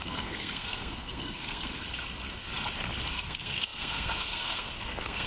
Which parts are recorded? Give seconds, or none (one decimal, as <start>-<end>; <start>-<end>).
1.7-3.1